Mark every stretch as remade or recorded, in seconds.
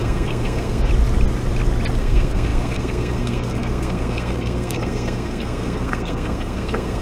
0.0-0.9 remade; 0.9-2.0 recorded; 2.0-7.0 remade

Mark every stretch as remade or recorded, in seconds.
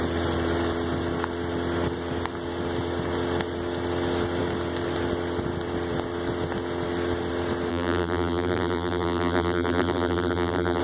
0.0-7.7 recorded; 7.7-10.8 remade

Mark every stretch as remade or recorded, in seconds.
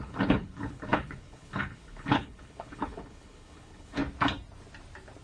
0.0-4.0 remade; 4.0-5.2 recorded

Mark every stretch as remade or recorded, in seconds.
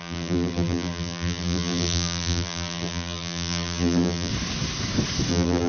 0.0-4.3 remade; 4.3-5.3 recorded; 5.3-5.7 remade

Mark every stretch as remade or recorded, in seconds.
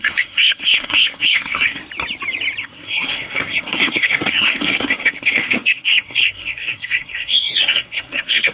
0.0-1.8 remade; 1.8-2.6 recorded; 2.6-8.5 remade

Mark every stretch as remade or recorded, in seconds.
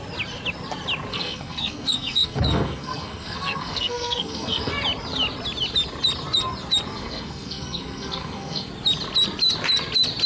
0.0-1.1 recorded; 1.1-4.7 remade; 4.7-6.9 recorded; 6.9-8.7 remade; 8.7-10.3 recorded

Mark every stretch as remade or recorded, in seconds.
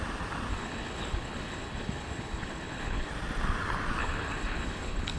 0.0-0.5 recorded; 0.5-3.1 remade; 3.1-4.0 recorded; 4.0-5.2 remade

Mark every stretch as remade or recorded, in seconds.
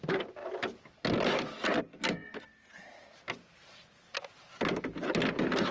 0.0-5.7 recorded